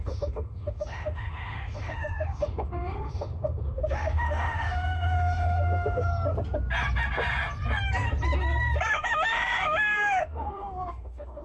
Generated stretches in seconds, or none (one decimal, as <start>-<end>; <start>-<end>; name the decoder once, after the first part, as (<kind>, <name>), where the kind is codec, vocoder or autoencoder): 0.0-6.1 (autoencoder, DAC-VAE); 8.9-11.4